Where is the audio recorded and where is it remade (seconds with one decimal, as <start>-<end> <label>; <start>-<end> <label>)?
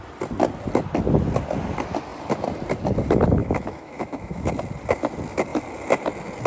0.0-3.4 recorded; 3.4-4.5 remade; 4.5-6.5 recorded